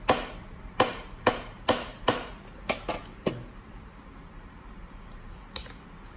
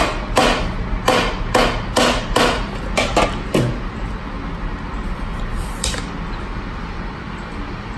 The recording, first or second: second